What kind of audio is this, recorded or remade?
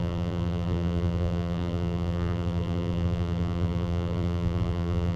remade